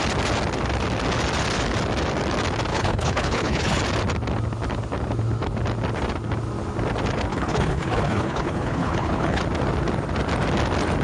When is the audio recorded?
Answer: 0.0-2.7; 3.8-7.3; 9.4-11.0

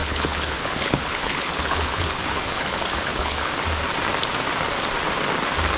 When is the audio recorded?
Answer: 3.5-5.8

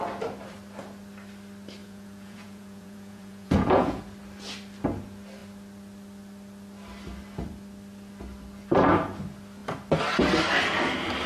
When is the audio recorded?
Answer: 0.0-1.8; 4.0-11.3